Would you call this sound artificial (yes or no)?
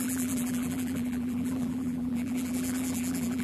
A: yes